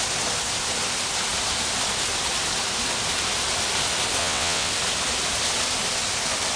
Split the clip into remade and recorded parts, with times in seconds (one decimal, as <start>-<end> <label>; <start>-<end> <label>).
0.0-4.2 recorded; 4.2-4.7 remade; 4.7-6.6 recorded

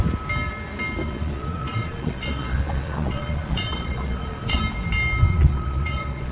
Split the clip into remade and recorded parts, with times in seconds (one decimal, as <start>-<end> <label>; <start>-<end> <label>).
0.0-1.0 recorded; 1.0-4.6 remade; 4.6-5.3 recorded; 5.3-6.3 remade

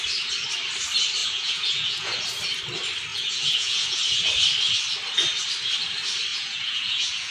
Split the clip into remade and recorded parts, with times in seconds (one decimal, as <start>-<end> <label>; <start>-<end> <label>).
0.0-1.2 recorded; 1.2-2.2 remade; 2.2-3.1 recorded; 3.1-4.3 remade; 4.3-6.3 recorded; 6.3-7.3 remade

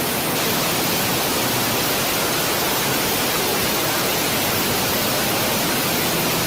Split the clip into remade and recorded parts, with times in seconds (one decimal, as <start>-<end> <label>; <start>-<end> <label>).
0.0-1.3 recorded; 1.3-2.6 remade; 2.6-3.5 recorded; 3.5-4.7 remade; 4.7-6.5 recorded

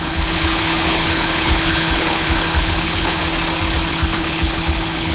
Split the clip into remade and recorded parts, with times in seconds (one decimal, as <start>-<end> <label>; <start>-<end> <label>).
0.0-3.2 remade; 3.2-3.9 recorded; 3.9-5.1 remade